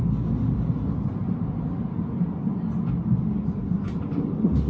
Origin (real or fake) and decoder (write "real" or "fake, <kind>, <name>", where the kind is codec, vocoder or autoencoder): real